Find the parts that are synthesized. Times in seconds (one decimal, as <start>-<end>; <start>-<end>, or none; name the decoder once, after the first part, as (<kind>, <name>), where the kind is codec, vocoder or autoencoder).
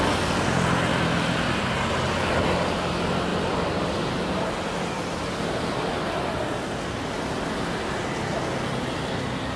none